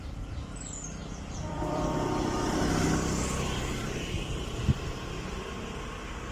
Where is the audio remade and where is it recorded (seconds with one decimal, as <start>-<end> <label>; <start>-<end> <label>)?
0.0-1.0 recorded; 1.0-4.8 remade; 4.8-6.3 recorded